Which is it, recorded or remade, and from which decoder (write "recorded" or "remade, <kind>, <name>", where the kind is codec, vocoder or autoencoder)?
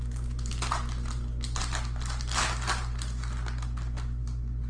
recorded